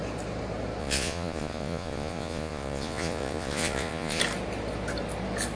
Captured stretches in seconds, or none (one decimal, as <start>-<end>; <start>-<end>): 0.0-0.8; 4.2-5.6